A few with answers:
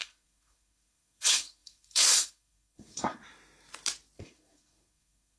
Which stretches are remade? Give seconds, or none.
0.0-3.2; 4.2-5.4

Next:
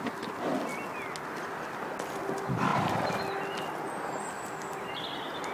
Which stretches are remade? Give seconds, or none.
none

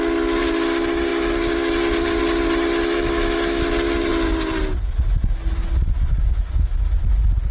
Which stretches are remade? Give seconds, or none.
none

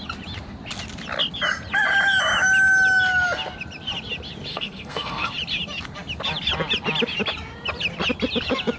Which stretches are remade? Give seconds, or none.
4.5-5.3

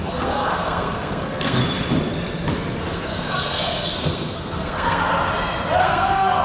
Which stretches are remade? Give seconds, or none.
0.0-1.6; 2.8-5.1; 5.8-6.4